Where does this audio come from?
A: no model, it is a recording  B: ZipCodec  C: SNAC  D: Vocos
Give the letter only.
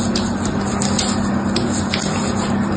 A